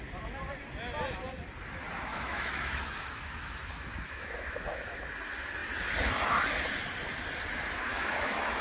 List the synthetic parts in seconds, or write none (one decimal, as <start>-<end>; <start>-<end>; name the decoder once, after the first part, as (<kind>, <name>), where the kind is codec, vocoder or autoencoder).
2.1-5.0 (autoencoder, DAC-VAE); 7.9-8.6

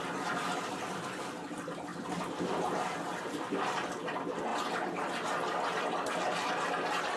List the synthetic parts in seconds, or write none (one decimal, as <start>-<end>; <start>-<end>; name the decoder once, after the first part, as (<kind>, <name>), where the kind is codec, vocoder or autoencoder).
none

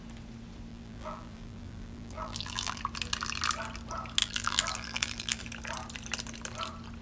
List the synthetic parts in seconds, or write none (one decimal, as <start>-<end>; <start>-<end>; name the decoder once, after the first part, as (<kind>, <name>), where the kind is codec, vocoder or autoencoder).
0.7-2.8 (vocoder, BigVGAN v2); 4.2-5.4